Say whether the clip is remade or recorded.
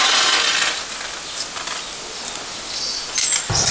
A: recorded